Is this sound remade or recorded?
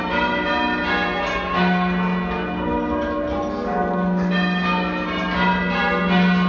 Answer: recorded